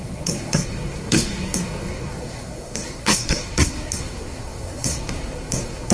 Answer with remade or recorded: remade